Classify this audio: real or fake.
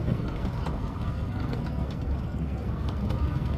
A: fake